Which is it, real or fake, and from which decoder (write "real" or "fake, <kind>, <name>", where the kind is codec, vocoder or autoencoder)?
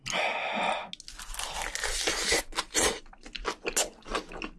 real